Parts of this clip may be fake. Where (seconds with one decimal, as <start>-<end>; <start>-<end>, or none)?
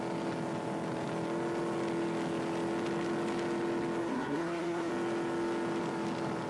4.0-4.9